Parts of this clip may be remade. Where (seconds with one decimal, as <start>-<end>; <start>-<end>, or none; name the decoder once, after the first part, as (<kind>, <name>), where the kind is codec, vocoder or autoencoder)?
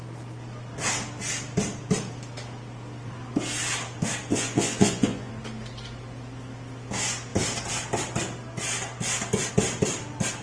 4.3-5.3 (vocoder, Vocos)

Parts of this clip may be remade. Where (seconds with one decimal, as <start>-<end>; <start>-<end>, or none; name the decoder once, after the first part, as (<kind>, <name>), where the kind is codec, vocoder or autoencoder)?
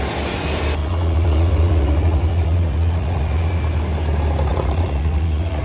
0.8-3.6 (vocoder, Vocos); 4.5-5.6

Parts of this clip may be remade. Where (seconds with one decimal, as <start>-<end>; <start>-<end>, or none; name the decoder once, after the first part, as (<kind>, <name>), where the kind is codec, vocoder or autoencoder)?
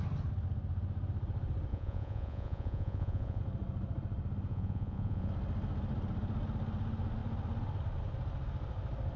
1.7-3.4 (vocoder, Vocos); 4.5-5.3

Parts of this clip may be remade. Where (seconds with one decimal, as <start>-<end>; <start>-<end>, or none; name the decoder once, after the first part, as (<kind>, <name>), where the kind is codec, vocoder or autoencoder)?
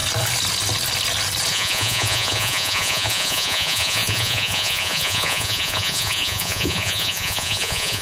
1.5-8.0 (vocoder, Vocos)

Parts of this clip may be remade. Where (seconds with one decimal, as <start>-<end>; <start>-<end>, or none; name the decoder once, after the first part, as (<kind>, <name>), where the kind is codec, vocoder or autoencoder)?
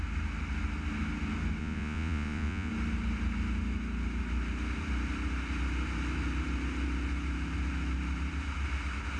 1.6-2.7 (vocoder, Vocos)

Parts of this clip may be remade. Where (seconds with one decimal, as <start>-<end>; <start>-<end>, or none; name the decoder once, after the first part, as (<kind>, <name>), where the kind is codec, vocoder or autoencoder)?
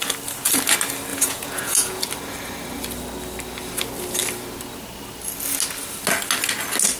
1.1-2.0 (vocoder, Vocos)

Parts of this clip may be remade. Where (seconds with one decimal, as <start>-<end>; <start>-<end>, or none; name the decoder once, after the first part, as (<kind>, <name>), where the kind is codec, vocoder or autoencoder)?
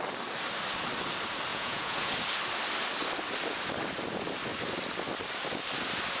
1.5-2.1 (vocoder, Vocos)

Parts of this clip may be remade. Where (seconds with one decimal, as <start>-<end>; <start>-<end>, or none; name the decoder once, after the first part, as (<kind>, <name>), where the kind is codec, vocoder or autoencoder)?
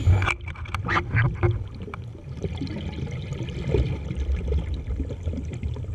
none